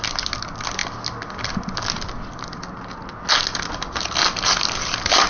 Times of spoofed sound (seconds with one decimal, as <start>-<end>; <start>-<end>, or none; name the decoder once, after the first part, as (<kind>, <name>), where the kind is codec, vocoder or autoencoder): none